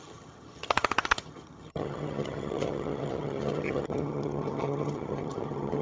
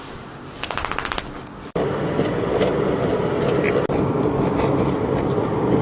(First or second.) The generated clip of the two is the first